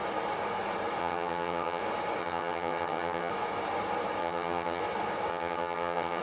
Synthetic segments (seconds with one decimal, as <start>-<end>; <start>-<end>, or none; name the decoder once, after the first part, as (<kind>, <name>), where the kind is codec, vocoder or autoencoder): 1.0-1.8 (vocoder, HiFi-GAN); 2.2-3.3; 4.2-4.8; 5.3-6.2